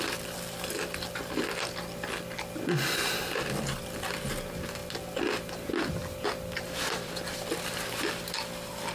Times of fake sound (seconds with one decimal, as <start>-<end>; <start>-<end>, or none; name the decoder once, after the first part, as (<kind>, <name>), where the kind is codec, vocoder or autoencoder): 6.0-7.3 (vocoder, BigVGAN v2)